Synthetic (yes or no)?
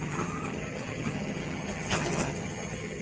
yes